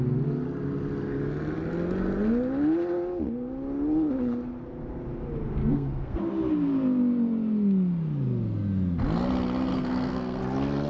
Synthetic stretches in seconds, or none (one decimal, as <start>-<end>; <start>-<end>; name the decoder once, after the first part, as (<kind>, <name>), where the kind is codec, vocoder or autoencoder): 5.6-6.2 (codec, SNAC); 9.7-10.4